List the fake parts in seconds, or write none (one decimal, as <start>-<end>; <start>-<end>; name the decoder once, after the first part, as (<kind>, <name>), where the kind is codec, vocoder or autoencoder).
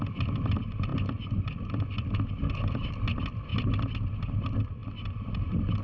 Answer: none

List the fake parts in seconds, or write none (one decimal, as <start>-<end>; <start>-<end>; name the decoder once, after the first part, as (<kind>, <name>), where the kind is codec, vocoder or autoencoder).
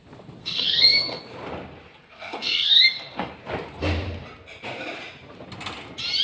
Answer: 0.4-1.2 (codec, SNAC); 2.0-3.3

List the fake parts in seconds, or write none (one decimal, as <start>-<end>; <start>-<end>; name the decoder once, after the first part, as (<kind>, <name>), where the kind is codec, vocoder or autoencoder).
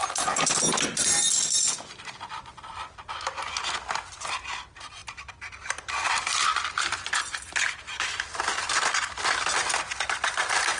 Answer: none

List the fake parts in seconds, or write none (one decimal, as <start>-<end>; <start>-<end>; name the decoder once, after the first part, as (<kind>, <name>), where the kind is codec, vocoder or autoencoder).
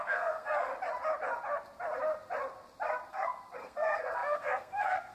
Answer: 0.0-0.7 (codec, SNAC); 3.1-5.1